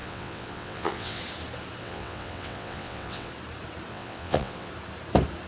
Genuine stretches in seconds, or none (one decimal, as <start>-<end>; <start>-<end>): 1.2-1.8; 3.3-3.9; 4.7-5.5